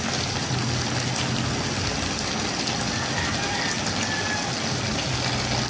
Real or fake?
real